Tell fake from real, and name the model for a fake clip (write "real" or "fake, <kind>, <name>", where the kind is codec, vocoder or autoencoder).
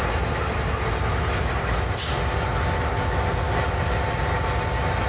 real